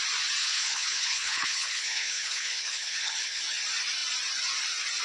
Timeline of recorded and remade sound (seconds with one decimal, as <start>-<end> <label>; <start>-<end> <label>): 0.0-0.4 recorded; 0.4-3.4 remade; 3.4-5.0 recorded